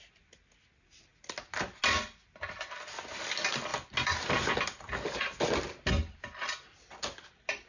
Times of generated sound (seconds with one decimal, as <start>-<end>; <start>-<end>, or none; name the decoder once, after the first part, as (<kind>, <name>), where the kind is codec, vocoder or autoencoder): none